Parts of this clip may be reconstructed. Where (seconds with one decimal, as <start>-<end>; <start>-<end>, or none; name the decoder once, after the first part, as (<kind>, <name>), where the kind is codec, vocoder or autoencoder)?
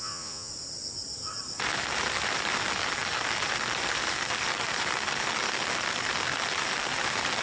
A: 0.0-0.5 (vocoder, Vocos)